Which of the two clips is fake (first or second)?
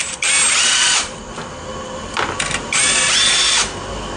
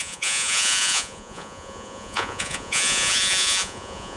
second